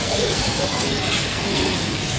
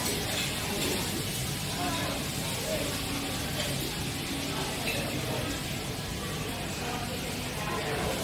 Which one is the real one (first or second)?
second